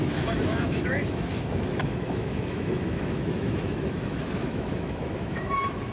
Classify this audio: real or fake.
fake